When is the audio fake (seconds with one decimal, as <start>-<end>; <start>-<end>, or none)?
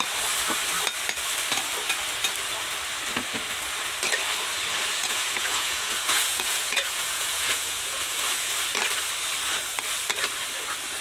5.0-8.5